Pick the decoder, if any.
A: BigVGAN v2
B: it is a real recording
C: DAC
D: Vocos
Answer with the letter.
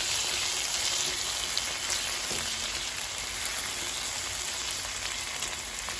B